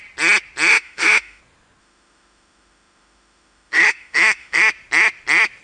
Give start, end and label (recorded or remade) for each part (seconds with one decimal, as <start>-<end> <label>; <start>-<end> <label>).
0.0-0.7 recorded; 0.7-1.4 remade; 1.4-1.8 recorded; 1.8-4.6 remade; 4.6-5.6 recorded